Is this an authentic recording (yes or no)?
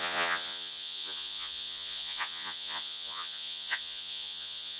no